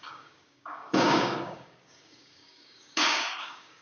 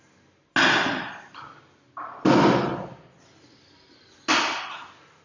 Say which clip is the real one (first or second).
second